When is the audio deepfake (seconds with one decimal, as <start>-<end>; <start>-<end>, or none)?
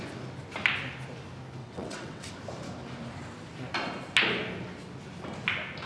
1.6-2.3